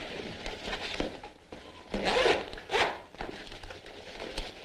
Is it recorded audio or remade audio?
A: recorded